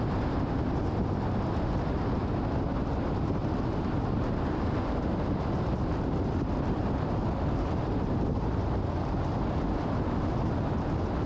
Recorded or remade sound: recorded